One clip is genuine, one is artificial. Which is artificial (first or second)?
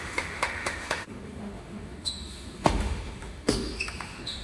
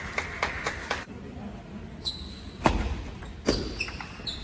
first